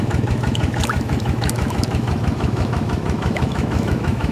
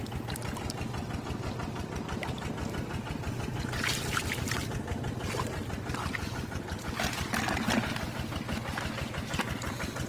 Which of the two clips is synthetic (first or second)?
first